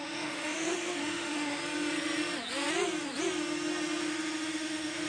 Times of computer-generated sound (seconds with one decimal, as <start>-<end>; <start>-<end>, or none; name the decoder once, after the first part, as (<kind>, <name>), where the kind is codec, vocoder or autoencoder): 0.0-1.6 (autoencoder, DAC-VAE); 4.0-5.1